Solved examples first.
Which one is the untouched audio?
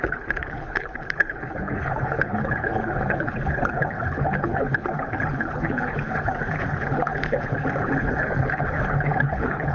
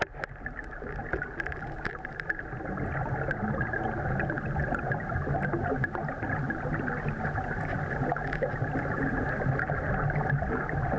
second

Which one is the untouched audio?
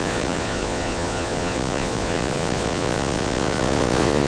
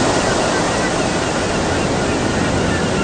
second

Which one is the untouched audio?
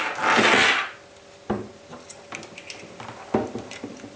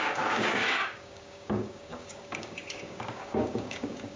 first